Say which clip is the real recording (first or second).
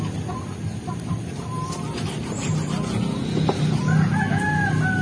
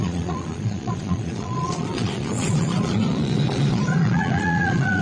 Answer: first